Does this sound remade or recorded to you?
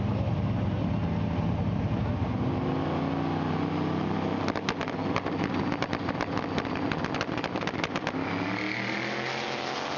recorded